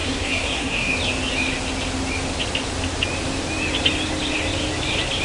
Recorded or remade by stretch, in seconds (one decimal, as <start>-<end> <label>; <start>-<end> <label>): 0.0-0.9 remade; 0.9-5.2 recorded

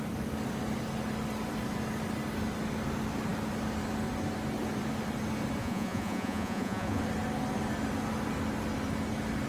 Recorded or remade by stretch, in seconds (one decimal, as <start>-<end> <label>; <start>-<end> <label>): 0.0-5.6 recorded; 5.6-7.0 remade; 7.0-9.5 recorded